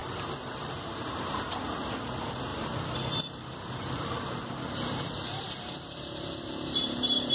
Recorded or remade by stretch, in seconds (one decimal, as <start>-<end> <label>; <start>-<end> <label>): 0.0-1.4 remade; 1.4-2.5 recorded; 2.5-7.3 remade